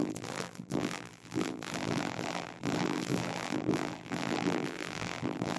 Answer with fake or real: fake